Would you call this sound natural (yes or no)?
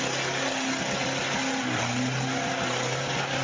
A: yes